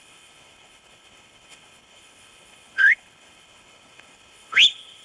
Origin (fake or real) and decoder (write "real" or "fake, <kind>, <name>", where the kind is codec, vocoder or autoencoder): fake, codec, HILCodec